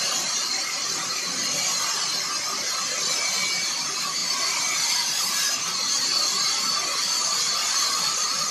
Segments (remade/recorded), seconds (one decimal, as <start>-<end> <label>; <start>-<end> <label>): 0.0-8.5 recorded